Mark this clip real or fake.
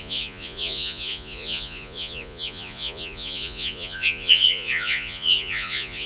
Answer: fake